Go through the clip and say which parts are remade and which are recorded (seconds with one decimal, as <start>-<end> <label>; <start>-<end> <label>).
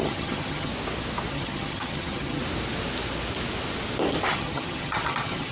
0.0-0.7 remade; 0.7-1.3 recorded; 1.3-2.4 remade; 2.4-4.3 recorded; 4.3-5.5 remade